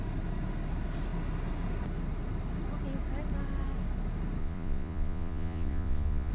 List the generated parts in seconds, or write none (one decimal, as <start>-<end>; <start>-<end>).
4.4-6.3